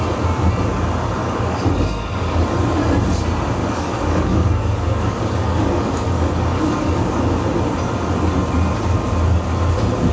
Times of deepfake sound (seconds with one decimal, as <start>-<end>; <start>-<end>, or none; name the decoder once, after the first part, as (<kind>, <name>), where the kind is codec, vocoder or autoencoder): 1.2-2.5 (codec, DAC); 3.6-7.2